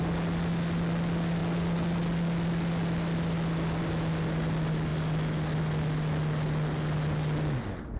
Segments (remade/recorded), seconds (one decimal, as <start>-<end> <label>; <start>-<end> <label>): 0.0-8.0 recorded